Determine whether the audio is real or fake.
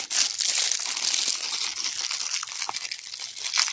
real